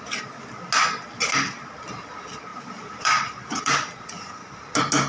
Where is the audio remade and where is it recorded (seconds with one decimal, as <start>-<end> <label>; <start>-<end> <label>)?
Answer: 0.0-2.5 recorded; 2.5-3.6 remade; 3.6-5.1 recorded